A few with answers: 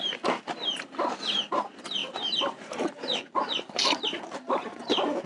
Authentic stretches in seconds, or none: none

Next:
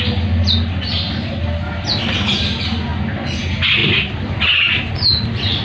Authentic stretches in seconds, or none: 0.0-3.8; 4.3-5.6

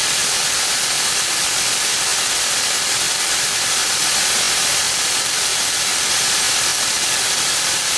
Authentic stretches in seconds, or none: 4.0-4.8; 6.1-6.7

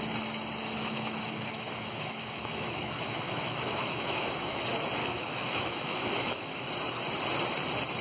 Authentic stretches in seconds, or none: 0.0-0.8; 4.6-5.0; 6.7-8.0

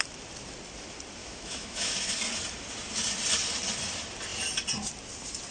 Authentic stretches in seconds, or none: 0.0-1.2; 2.1-5.5

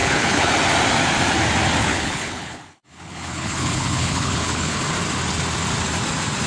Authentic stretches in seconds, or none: 0.5-1.8; 4.8-6.5

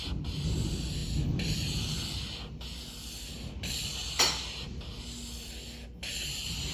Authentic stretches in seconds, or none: 0.0-6.7